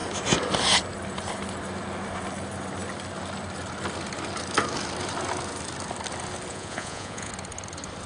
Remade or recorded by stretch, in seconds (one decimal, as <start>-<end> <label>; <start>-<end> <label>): 0.0-6.5 recorded; 6.5-7.3 remade; 7.3-8.1 recorded